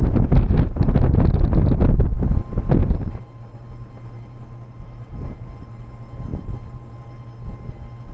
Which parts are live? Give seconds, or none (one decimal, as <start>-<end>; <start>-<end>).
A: 0.0-2.8; 5.7-6.3; 6.9-8.1